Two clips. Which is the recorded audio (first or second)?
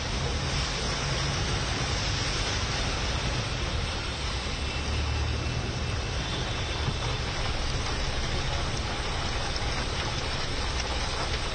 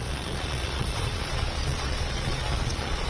first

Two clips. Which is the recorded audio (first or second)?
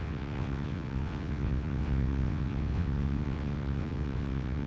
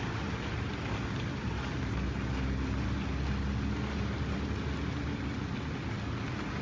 second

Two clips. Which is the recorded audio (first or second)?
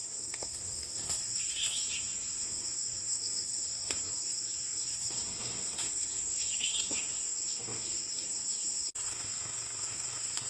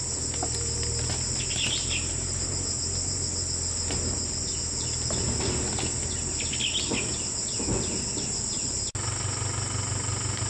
second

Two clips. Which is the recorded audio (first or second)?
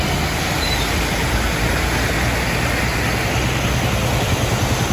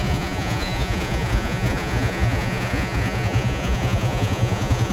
first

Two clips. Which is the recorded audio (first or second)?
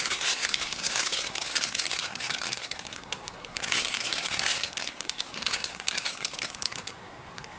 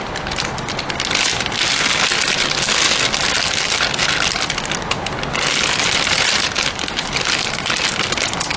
second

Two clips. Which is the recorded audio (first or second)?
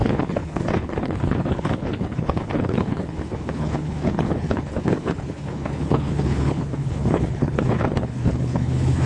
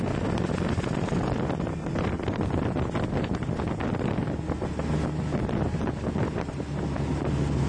second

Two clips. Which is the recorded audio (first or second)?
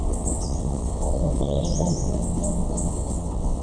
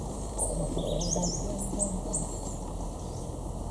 second